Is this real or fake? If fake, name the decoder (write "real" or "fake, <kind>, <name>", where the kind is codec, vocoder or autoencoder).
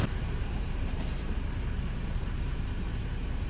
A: fake, vocoder, BigVGAN v2